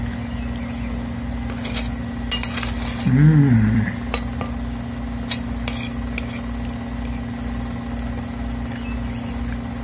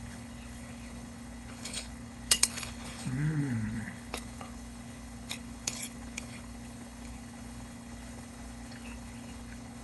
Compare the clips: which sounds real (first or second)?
first